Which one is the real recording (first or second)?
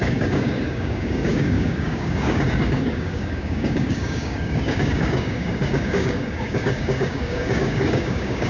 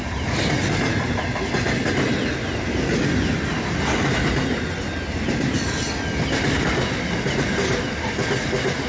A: second